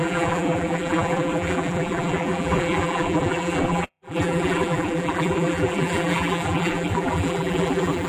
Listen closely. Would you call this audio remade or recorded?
remade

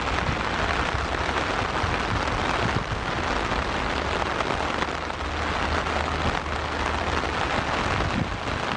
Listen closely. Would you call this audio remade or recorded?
recorded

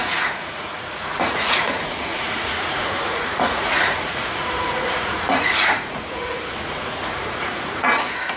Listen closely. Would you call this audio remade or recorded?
remade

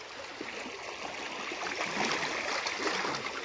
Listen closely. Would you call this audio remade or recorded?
recorded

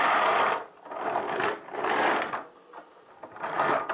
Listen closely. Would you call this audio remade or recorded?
recorded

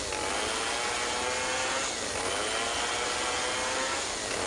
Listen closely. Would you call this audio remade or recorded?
recorded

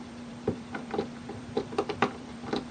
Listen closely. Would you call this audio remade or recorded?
remade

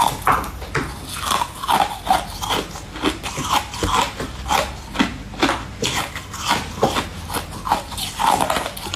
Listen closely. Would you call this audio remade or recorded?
recorded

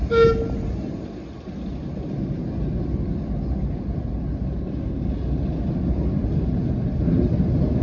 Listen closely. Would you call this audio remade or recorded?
recorded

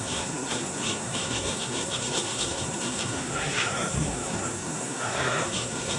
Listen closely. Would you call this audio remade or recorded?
remade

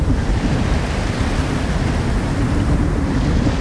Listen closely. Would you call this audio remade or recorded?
recorded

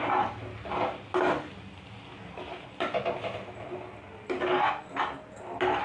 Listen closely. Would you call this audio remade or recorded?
recorded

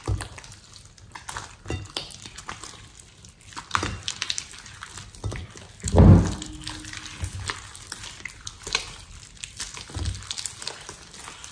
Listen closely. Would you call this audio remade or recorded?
recorded